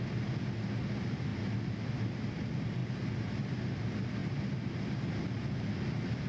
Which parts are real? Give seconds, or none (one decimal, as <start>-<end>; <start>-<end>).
0.0-6.3

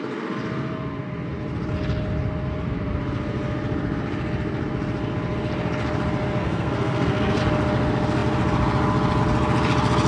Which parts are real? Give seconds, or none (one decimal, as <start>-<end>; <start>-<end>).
0.0-6.4; 7.4-10.1